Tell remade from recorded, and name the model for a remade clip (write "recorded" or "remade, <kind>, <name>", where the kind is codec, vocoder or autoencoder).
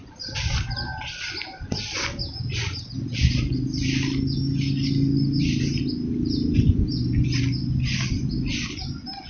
recorded